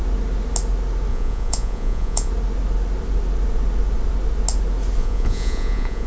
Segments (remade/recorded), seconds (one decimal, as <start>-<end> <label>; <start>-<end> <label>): 0.0-1.1 recorded; 1.1-2.3 remade; 2.3-5.0 recorded; 5.0-6.1 remade